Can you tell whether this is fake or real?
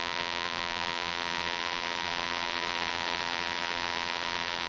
fake